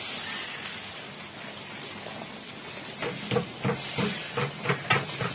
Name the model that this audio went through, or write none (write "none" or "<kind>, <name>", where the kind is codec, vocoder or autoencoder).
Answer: none